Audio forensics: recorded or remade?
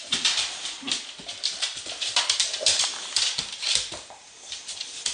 remade